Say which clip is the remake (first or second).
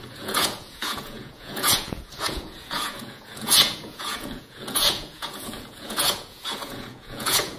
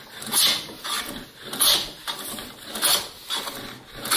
first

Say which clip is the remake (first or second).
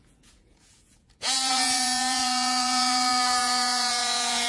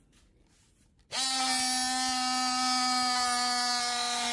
first